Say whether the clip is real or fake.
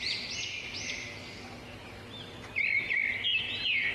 real